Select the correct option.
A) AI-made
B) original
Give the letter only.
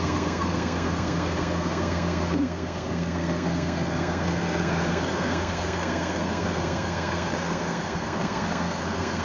A